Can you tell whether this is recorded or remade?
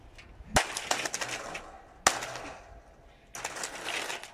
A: recorded